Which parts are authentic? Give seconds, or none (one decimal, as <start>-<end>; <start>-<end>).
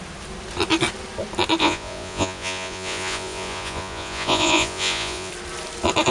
0.0-1.6; 5.3-6.1